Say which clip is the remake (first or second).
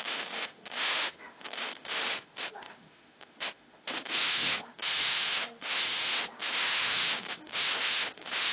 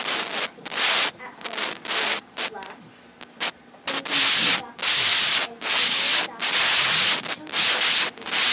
first